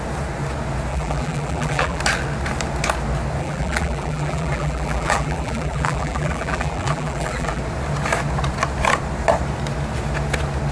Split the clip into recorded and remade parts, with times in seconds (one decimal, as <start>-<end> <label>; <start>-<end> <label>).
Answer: 0.0-0.9 recorded; 0.9-2.0 remade; 2.0-3.4 recorded; 3.4-7.6 remade; 7.6-10.7 recorded